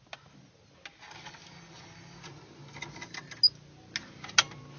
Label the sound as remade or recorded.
recorded